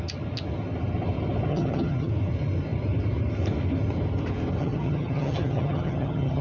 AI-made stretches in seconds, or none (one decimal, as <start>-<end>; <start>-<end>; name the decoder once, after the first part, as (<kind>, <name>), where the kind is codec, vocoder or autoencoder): 1.5-2.1 (vocoder, HiFi-GAN); 4.6-6.4